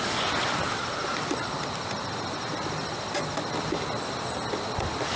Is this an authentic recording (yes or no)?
yes